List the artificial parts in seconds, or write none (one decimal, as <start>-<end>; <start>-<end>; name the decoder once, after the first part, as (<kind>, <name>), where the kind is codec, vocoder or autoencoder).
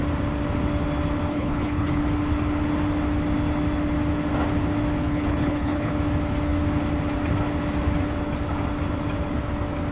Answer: 1.3-2.0 (codec, HILCodec); 5.0-5.9